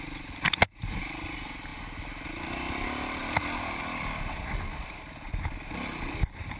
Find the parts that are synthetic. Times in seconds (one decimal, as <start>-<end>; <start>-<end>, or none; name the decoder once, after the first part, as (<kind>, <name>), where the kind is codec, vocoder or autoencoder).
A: 3.2-3.8 (vocoder, BigVGAN v2)